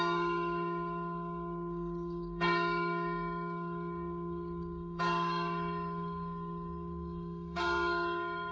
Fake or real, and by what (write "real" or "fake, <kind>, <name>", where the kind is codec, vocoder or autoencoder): fake, codec, DAC